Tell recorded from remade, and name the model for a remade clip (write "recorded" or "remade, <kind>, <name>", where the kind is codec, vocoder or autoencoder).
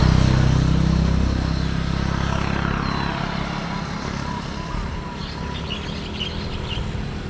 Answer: recorded